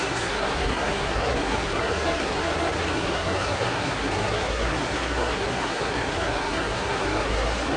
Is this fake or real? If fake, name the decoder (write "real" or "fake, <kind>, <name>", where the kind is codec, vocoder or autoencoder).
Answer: fake, codec, SNAC